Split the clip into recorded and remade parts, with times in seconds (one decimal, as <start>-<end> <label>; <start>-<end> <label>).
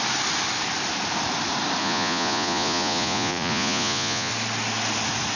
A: 0.0-1.8 recorded; 1.8-4.3 remade; 4.3-5.4 recorded